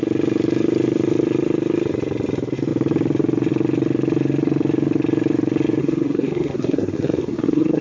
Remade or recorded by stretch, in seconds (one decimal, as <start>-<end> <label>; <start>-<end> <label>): 0.0-5.8 recorded; 5.8-7.8 remade